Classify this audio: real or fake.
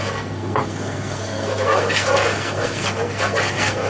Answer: fake